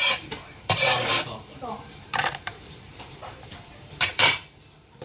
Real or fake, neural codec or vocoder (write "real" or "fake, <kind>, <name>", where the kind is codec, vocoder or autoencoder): fake, vocoder, BigVGAN v2